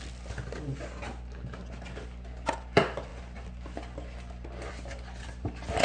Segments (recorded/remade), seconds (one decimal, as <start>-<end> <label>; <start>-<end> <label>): 0.0-5.8 recorded